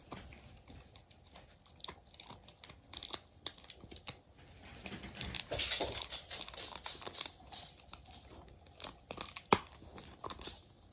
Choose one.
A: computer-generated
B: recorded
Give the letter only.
B